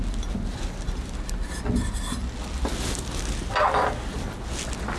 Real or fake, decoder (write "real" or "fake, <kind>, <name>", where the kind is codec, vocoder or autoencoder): real